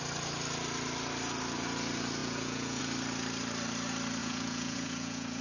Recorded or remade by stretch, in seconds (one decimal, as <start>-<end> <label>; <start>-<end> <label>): 0.0-2.2 recorded; 2.2-2.8 remade; 2.8-4.2 recorded; 4.2-5.4 remade